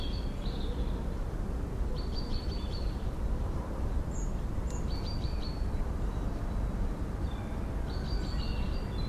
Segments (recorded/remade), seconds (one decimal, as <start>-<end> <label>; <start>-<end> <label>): 0.0-1.9 recorded; 1.9-6.1 remade; 6.1-9.1 recorded